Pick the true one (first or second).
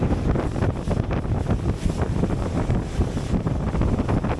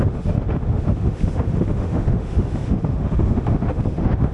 first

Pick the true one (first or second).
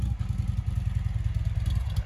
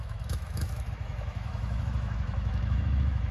first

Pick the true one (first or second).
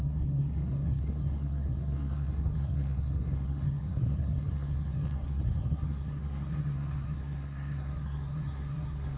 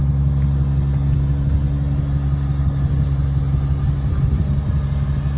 second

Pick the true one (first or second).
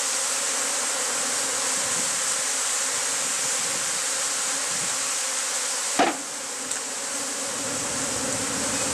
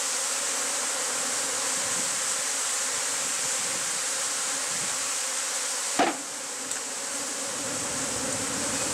first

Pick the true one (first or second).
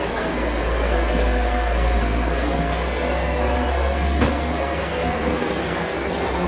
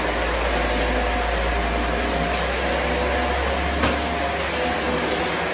second